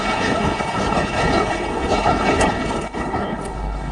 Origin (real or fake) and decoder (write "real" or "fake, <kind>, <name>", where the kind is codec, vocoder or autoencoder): fake, codec, HILCodec